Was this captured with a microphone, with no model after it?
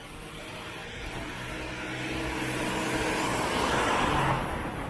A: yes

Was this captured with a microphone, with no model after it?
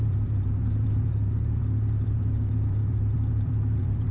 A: no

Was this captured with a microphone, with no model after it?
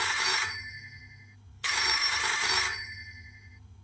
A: no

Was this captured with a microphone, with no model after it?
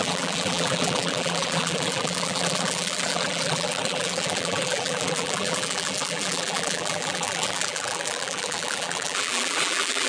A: no